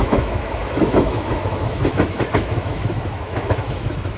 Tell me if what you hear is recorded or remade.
remade